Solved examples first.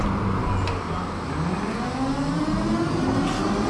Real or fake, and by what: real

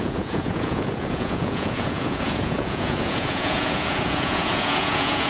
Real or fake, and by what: fake, vocoder, Vocos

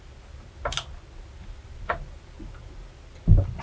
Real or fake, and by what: real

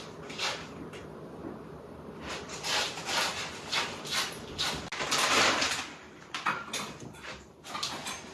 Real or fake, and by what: real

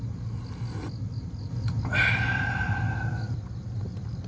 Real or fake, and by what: real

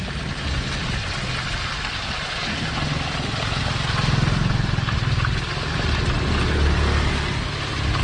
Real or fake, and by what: real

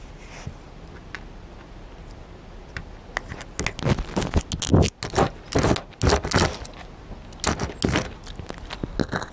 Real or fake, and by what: real